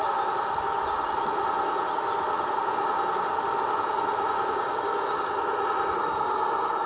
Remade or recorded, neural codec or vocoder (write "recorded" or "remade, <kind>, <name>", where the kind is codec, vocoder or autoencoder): recorded